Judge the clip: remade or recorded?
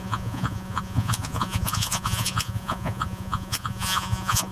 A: remade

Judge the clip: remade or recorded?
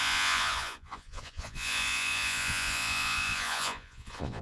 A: remade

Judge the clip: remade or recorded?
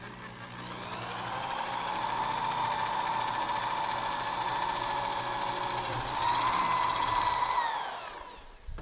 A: recorded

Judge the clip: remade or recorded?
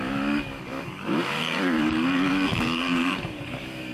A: remade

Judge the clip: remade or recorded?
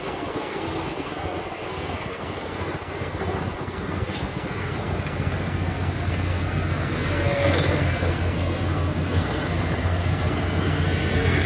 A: remade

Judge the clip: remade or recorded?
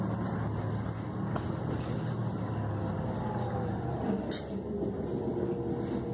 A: recorded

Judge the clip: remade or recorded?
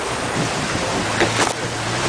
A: recorded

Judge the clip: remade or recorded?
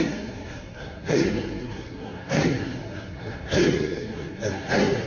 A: remade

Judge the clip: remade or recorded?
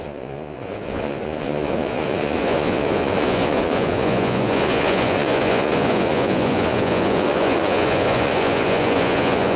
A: remade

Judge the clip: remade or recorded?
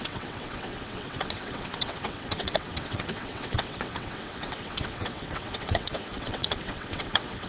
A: remade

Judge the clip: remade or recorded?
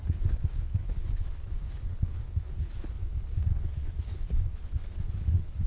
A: remade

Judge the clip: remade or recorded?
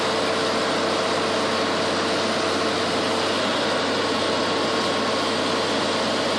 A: recorded